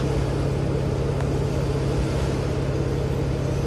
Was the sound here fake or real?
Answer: real